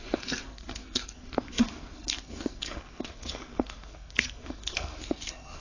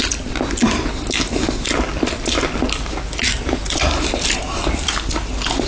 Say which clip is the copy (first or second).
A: first